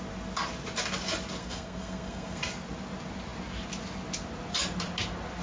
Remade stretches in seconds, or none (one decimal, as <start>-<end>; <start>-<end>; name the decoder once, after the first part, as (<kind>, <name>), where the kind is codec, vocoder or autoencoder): 1.4-2.4 (codec, SNAC)